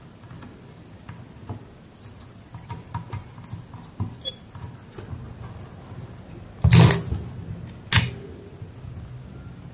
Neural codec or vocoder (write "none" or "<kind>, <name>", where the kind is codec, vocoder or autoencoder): none